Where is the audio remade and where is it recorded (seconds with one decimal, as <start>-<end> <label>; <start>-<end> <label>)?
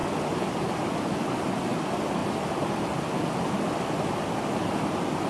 0.0-0.8 remade; 0.8-5.3 recorded